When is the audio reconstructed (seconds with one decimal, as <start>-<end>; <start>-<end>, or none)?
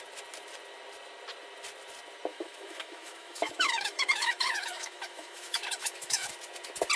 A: 2.3-6.3